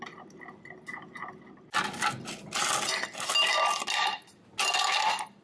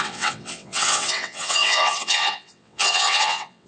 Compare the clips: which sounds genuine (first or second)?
first